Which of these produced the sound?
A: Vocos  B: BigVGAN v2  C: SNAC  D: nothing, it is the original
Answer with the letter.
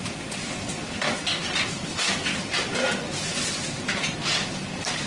D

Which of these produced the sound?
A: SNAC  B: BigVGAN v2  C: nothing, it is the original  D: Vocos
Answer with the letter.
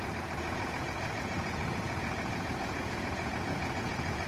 D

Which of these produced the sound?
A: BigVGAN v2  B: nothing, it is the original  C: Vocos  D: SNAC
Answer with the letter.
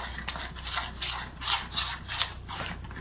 B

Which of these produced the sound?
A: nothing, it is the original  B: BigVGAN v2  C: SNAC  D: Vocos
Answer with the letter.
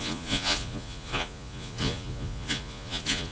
D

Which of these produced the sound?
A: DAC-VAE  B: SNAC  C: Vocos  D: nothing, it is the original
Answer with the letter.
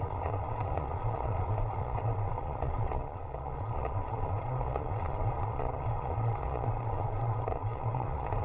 C